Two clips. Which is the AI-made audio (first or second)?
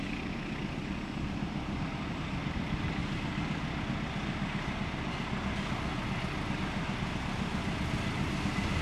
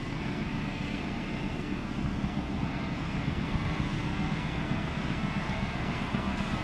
second